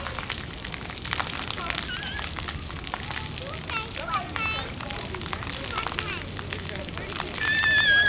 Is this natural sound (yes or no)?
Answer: yes